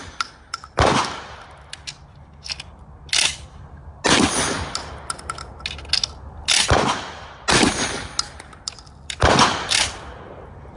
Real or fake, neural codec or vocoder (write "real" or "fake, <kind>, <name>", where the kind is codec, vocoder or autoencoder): real